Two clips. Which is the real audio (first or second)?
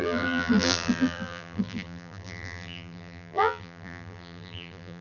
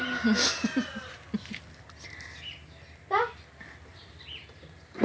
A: second